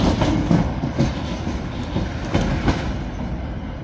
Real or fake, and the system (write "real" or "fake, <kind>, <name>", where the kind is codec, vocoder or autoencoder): real